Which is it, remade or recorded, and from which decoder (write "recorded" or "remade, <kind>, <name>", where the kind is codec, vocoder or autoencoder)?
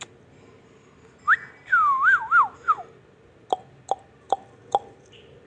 recorded